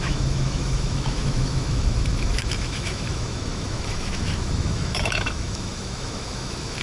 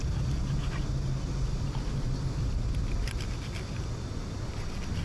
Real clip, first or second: second